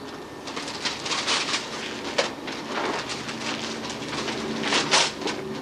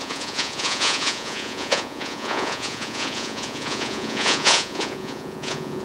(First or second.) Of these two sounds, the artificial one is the second